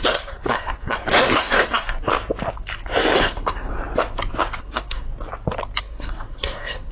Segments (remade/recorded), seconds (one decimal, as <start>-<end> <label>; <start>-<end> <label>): 0.0-2.1 remade; 2.1-3.2 recorded; 3.2-3.7 remade; 3.7-4.6 recorded; 4.6-5.1 remade; 5.1-5.8 recorded; 5.8-6.9 remade